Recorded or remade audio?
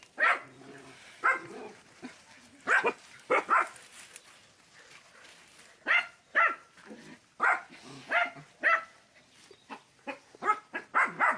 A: recorded